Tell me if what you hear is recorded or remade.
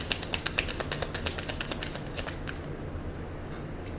recorded